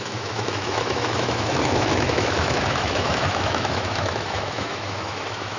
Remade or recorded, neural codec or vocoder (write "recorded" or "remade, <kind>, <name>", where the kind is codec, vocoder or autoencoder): remade, autoencoder, DAC-VAE